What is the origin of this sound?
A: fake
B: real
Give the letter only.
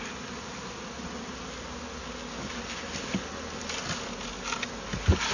B